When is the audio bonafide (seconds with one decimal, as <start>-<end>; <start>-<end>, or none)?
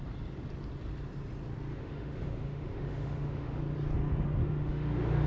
0.0-1.7; 3.6-4.4